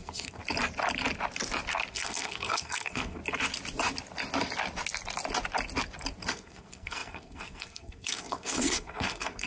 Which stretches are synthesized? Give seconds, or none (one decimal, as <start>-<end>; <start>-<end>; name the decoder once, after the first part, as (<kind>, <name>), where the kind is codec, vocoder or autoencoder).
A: 0.0-0.4 (codec, SNAC); 1.9-3.2; 6.3-9.5

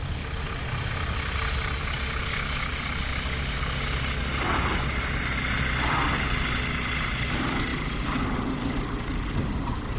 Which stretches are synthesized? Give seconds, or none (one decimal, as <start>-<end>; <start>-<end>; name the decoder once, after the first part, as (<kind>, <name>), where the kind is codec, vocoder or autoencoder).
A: none

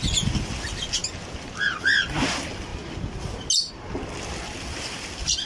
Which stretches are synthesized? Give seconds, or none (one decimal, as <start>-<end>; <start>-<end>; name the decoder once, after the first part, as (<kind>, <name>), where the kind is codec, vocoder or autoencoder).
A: none

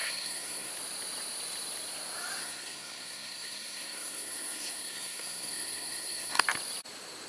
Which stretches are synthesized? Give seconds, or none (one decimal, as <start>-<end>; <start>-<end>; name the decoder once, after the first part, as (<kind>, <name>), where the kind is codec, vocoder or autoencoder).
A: 0.0-0.7 (codec, SNAC); 2.4-6.4